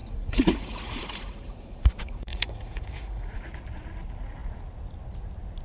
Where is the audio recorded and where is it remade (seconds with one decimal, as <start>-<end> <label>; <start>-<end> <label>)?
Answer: 0.0-3.4 remade; 3.4-5.6 recorded